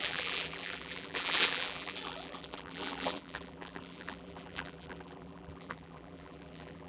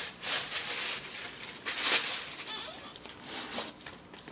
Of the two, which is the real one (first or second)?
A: second